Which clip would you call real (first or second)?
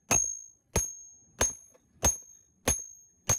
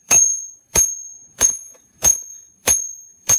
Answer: first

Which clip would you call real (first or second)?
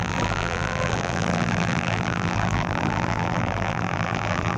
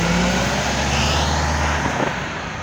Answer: second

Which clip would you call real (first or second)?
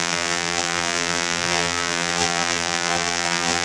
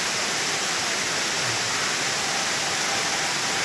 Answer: second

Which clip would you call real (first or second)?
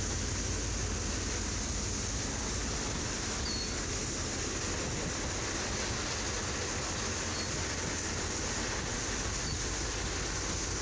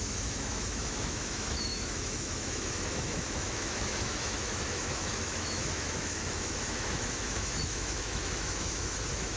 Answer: first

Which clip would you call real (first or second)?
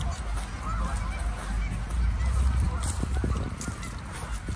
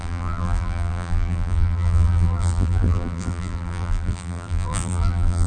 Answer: first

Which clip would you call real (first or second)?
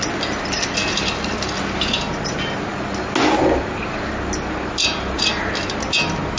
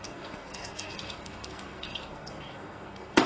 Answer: first